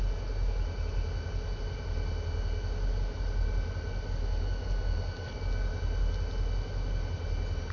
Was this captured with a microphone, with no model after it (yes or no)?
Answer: yes